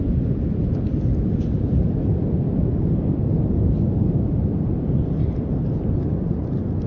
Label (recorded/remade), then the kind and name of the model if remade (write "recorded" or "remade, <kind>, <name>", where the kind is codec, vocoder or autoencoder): remade, vocoder, BigVGAN v2